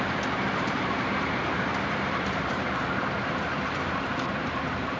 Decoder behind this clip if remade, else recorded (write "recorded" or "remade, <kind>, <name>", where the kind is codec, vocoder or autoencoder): remade, vocoder, BigVGAN v2